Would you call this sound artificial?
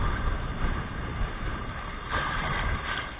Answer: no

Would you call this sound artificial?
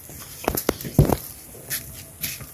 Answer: no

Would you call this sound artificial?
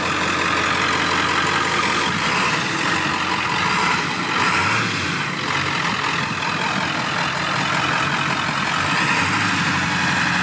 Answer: no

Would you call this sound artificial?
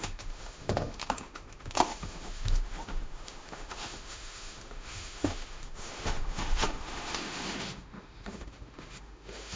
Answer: yes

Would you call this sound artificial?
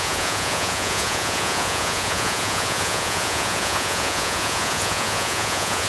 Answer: yes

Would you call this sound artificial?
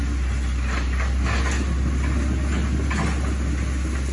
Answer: no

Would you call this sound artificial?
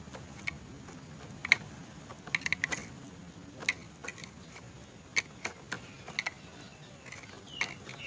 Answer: no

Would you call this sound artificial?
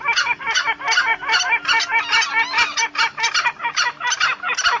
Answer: no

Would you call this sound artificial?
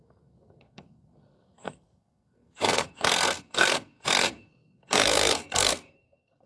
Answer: yes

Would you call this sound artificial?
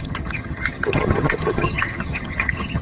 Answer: yes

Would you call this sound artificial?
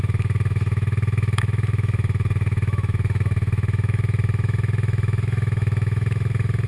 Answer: yes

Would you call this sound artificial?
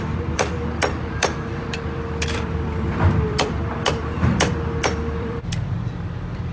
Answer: yes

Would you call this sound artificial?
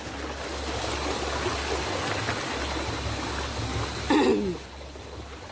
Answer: no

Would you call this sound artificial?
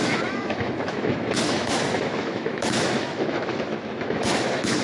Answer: yes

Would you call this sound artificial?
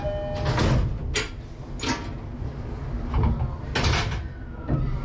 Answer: no